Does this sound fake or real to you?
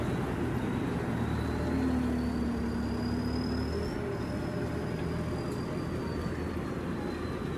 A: real